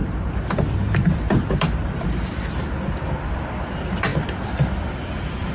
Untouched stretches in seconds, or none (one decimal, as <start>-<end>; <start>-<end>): none